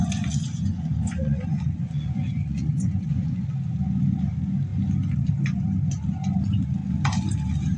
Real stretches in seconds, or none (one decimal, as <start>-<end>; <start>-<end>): 3.4-7.8